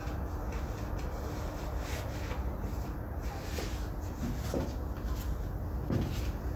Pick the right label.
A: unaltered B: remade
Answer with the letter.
A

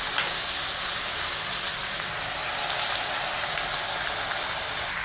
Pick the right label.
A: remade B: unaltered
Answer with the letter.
B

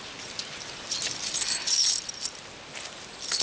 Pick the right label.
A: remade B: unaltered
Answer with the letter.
B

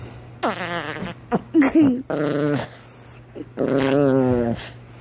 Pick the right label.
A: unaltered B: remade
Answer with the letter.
A